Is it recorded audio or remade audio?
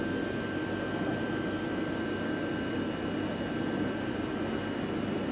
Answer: recorded